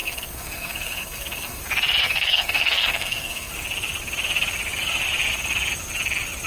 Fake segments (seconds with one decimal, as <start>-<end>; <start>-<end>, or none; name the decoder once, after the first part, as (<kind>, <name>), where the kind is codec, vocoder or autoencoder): 0.0-1.6 (codec, SNAC); 2.0-3.5